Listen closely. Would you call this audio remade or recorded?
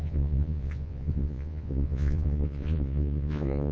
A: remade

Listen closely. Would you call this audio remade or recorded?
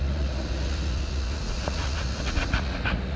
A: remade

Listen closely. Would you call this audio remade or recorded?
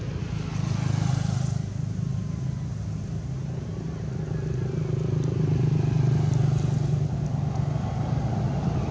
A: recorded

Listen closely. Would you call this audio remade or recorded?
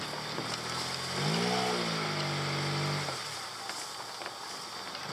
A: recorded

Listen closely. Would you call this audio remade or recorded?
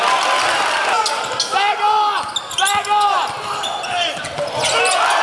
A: recorded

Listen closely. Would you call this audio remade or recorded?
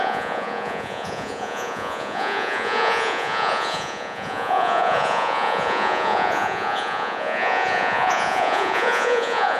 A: remade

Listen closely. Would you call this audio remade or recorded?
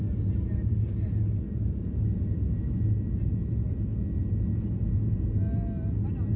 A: recorded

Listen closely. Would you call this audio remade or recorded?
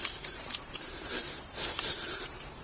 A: remade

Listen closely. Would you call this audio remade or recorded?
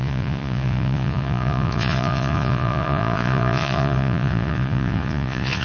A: remade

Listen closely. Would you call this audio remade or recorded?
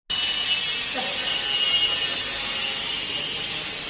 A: recorded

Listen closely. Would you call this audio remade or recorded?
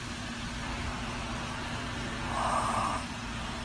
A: remade